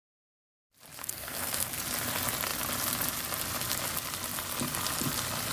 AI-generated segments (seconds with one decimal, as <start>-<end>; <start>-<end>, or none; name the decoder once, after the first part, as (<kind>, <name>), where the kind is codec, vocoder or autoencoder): 1.0-1.7 (codec, SNAC)